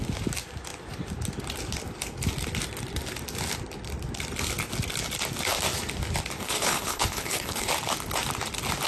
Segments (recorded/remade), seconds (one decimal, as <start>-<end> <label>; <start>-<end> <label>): 0.0-6.4 recorded; 6.4-7.7 remade; 7.7-8.9 recorded